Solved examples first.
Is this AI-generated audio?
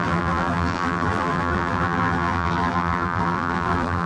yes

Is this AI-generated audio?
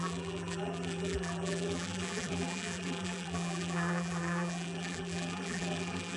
yes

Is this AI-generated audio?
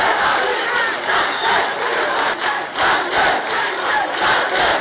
yes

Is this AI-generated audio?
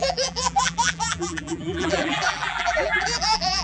yes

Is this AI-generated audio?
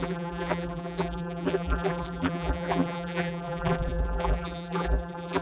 yes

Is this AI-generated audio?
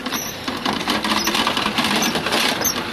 no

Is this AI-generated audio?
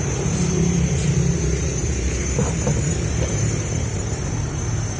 yes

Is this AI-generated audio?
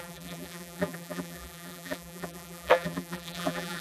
yes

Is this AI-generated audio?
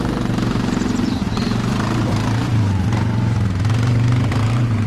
yes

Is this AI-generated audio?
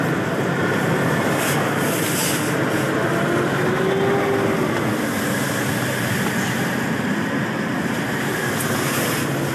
no